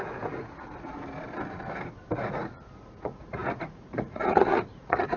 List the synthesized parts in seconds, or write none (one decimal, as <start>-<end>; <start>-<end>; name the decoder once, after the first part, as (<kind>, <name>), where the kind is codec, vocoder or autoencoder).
0.0-0.9 (vocoder, Vocos); 2.2-5.2